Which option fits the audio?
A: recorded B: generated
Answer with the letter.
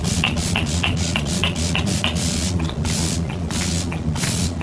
B